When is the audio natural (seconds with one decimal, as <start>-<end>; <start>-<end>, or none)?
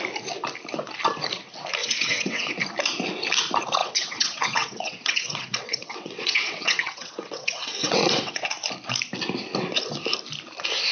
0.0-1.8; 2.5-3.8; 8.5-10.9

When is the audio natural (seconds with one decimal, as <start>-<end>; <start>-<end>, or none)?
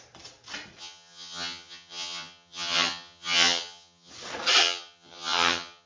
0.0-0.8; 4.1-4.6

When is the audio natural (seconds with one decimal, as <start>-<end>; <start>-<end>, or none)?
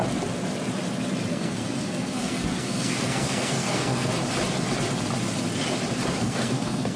0.0-1.3; 4.1-6.2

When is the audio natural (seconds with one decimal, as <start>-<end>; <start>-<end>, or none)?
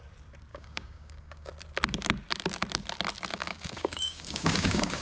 0.0-0.5; 1.5-3.3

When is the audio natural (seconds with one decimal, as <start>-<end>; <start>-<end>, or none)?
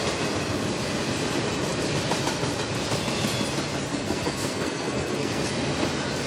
0.0-3.9; 5.5-6.3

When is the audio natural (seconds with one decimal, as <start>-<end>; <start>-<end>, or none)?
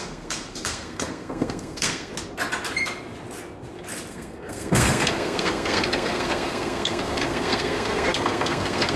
2.1-4.1